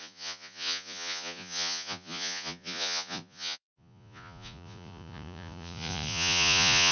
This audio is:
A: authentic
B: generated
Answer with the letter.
B